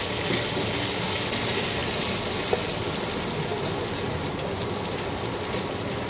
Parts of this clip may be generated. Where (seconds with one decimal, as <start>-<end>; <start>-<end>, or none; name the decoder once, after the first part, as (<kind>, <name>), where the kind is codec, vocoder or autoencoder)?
none